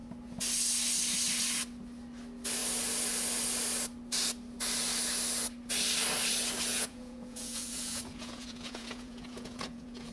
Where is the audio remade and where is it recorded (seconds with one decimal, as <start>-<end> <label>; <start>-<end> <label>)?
0.0-6.7 recorded; 6.7-10.1 remade